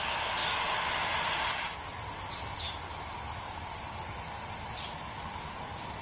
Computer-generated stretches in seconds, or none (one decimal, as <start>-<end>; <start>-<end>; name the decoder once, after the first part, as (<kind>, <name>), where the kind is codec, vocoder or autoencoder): 0.4-2.0 (vocoder, BigVGAN v2)